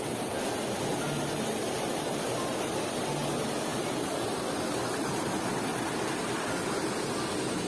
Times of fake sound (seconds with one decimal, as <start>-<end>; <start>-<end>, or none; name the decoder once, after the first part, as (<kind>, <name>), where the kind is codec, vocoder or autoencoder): none